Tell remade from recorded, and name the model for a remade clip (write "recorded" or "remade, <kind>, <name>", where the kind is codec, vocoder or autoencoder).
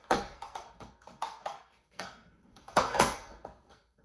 remade, codec, SNAC